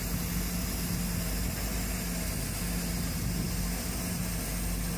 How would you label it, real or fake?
real